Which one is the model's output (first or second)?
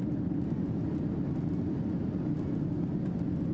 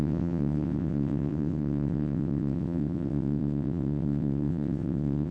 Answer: second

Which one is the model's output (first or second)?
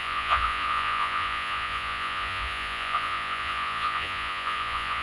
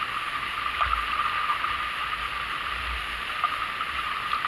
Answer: first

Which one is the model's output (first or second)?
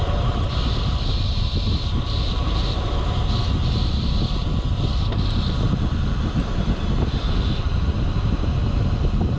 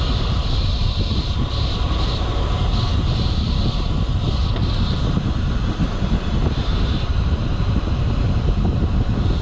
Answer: second